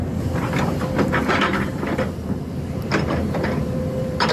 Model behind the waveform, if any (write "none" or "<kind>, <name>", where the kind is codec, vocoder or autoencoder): vocoder, BigVGAN v2